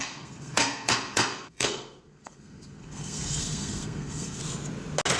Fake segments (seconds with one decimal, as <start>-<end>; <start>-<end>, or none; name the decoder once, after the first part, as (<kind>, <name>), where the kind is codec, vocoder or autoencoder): 0.0-4.4 (codec, SNAC)